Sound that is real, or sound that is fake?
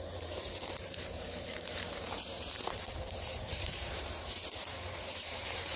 fake